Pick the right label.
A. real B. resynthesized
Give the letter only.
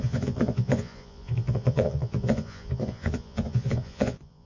B